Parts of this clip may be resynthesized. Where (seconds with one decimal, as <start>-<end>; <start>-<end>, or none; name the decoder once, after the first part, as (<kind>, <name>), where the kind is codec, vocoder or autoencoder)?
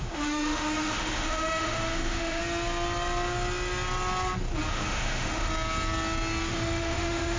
0.0-2.4 (autoencoder, DAC-VAE); 4.7-5.5; 6.5-7.4